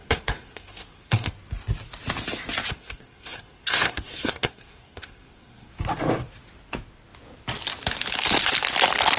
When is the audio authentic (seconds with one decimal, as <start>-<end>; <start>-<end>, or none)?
1.3-2.7; 5.7-9.2